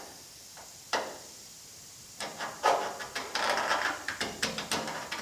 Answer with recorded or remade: remade